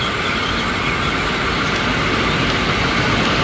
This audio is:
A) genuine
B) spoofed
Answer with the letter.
A